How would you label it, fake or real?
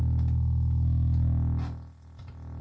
real